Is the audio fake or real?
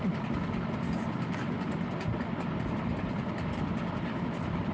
real